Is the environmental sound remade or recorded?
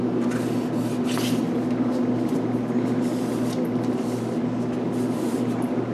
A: recorded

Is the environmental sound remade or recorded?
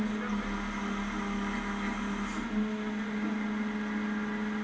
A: recorded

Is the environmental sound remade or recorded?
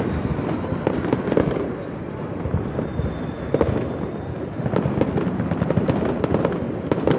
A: recorded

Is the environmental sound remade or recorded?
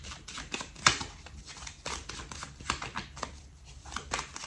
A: recorded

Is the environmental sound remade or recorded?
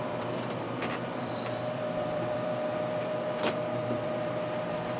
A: remade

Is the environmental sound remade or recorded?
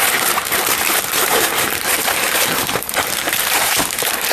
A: remade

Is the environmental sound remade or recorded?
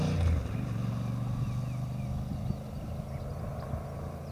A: recorded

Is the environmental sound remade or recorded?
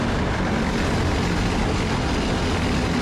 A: recorded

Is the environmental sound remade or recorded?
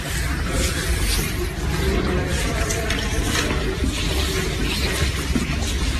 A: recorded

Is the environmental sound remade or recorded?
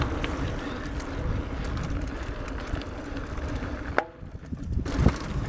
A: remade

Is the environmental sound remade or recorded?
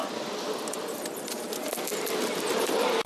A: recorded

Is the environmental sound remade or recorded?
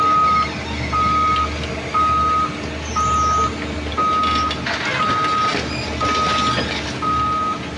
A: recorded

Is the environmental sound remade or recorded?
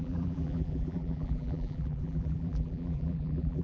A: remade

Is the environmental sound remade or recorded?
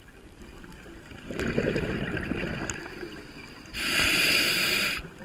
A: recorded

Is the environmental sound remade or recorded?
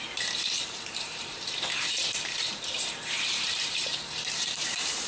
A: remade